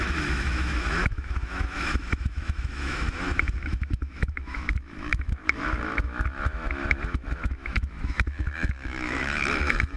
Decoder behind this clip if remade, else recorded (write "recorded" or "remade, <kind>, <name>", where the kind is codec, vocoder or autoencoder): remade, autoencoder, DAC-VAE